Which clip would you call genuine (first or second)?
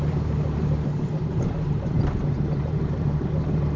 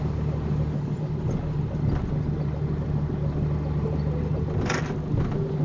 second